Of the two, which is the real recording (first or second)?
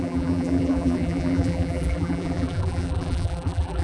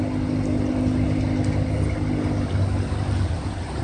second